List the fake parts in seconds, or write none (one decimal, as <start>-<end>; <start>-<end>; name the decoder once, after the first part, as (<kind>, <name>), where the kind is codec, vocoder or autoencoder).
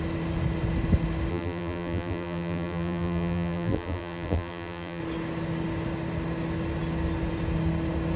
1.3-5.0 (vocoder, BigVGAN v2)